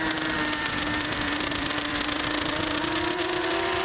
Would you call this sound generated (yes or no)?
yes